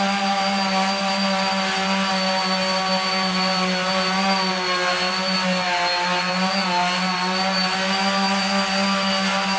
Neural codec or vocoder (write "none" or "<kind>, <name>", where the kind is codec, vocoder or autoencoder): none